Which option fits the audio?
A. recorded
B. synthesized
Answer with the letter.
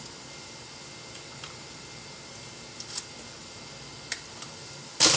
B